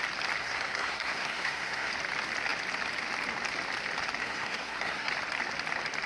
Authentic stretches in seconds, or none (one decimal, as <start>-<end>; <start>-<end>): 0.0-0.4; 1.9-4.2; 5.1-6.1